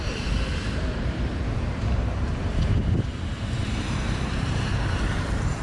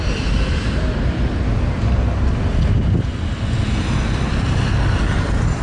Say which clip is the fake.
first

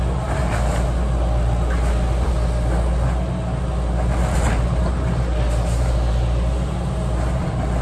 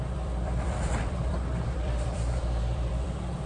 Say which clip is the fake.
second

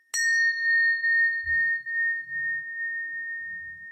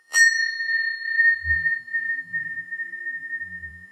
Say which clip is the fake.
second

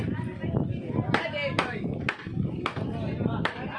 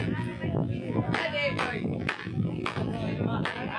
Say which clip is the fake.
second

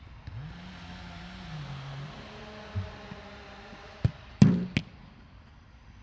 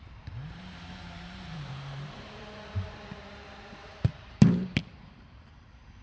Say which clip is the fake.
second